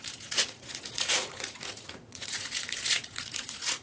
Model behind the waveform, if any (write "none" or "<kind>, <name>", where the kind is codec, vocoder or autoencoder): vocoder, Vocos